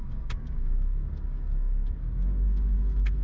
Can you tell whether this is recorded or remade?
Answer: remade